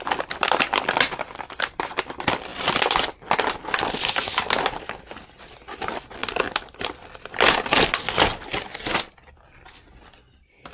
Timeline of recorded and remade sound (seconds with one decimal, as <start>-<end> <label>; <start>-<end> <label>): 0.0-10.7 recorded